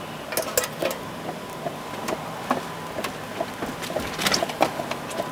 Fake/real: real